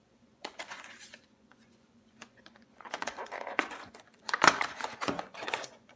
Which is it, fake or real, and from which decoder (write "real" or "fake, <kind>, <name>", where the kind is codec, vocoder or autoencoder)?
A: fake, vocoder, Vocos